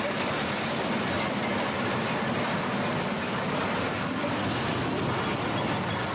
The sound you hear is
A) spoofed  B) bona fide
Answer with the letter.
B